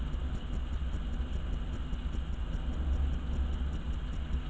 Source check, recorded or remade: recorded